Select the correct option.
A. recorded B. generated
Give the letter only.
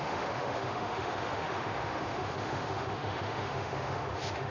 B